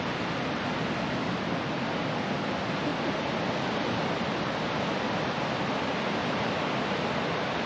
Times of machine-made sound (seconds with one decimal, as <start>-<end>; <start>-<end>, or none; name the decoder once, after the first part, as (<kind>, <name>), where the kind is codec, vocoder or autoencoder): none